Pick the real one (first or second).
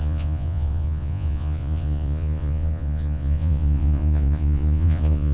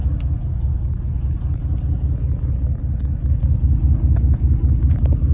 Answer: second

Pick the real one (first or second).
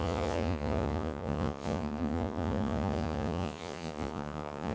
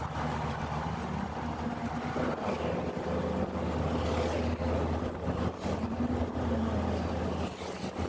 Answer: second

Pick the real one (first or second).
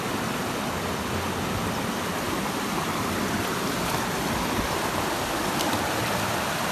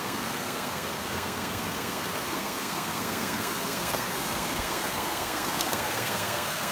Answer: first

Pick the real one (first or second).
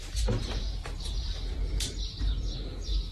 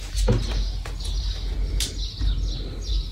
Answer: second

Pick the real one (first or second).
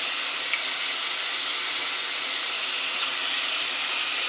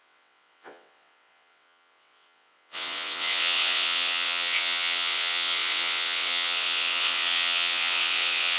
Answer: first